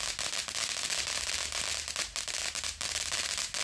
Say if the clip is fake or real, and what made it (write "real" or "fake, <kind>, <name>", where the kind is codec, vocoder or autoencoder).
real